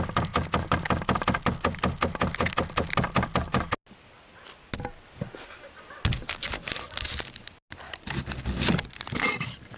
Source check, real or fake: real